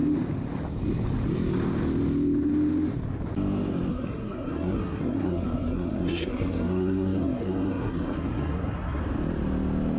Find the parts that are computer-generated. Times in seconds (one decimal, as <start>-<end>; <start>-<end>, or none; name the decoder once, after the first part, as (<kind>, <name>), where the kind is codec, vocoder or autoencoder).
3.9-9.0 (codec, SNAC)